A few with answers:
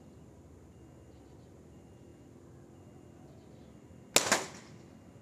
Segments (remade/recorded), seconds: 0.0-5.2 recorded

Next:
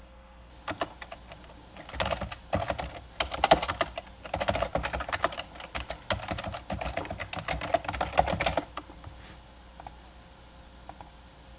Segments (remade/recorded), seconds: 0.0-0.5 remade; 0.5-11.6 recorded